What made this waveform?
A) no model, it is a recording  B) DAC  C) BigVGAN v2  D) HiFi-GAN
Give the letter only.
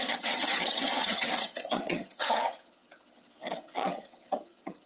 D